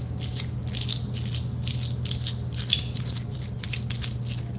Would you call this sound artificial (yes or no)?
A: no